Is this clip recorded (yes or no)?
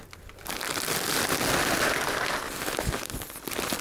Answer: yes